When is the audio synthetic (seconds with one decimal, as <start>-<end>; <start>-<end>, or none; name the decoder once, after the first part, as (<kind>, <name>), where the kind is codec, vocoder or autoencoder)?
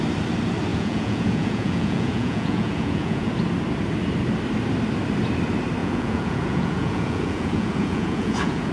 0.7-3.3 (vocoder, Vocos); 5.8-8.7